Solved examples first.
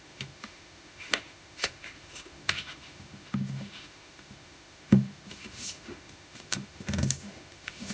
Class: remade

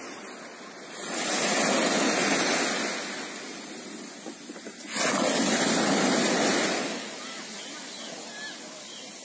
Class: recorded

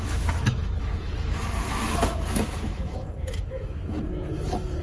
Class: remade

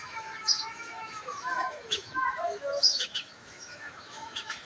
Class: remade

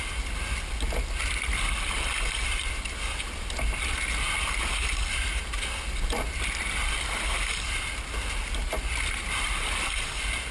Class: recorded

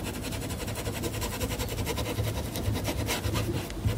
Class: recorded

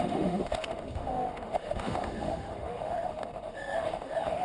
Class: remade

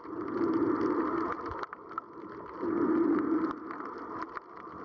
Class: recorded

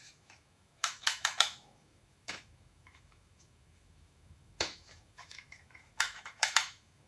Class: remade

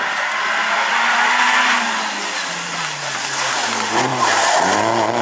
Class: recorded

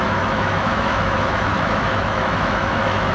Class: remade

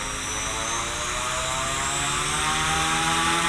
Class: recorded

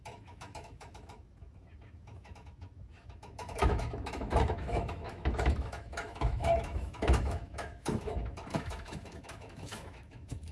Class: remade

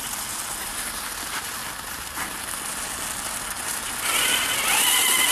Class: recorded